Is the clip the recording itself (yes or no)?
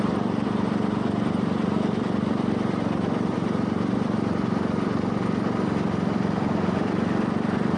no